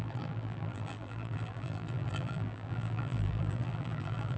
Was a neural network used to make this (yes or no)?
yes